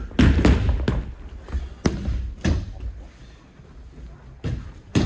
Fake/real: real